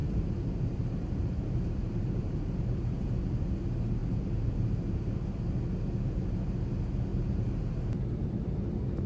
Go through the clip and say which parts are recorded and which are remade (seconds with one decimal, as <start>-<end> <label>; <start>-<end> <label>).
0.0-3.2 remade; 3.2-4.0 recorded; 4.0-4.8 remade; 4.8-7.1 recorded; 7.1-7.6 remade; 7.6-9.1 recorded

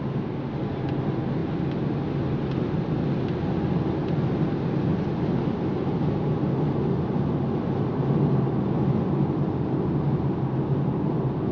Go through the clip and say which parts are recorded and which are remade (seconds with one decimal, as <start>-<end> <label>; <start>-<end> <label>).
0.0-11.5 recorded

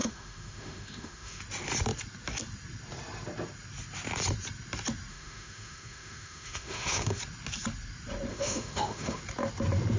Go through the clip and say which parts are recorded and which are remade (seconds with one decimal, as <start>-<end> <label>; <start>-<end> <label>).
0.0-1.4 remade; 1.4-5.1 recorded; 5.1-7.2 remade; 7.2-8.3 recorded; 8.3-9.2 remade; 9.2-10.0 recorded

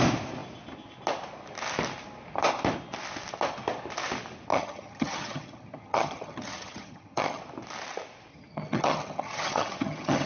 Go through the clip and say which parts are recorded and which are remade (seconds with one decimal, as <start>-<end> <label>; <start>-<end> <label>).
0.0-4.5 recorded; 4.5-7.4 remade; 7.4-8.3 recorded; 8.3-10.3 remade